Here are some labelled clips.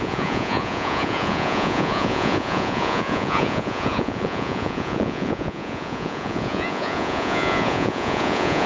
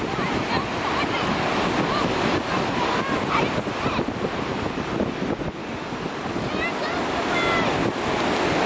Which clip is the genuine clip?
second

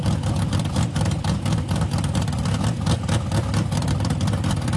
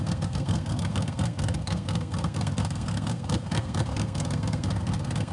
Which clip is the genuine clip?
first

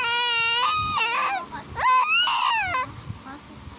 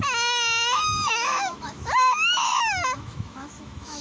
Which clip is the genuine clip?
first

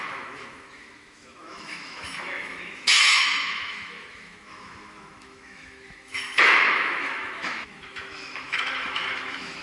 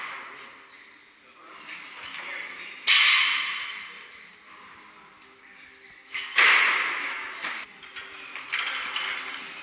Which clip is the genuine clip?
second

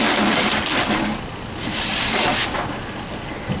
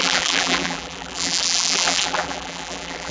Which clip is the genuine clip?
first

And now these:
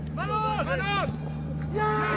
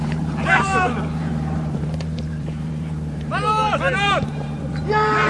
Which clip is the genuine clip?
first